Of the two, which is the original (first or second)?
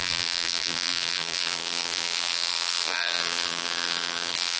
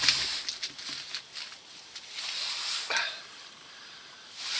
second